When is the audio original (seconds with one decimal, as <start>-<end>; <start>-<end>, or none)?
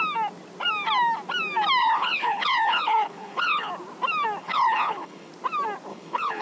0.0-1.8; 3.7-4.4; 5.3-5.9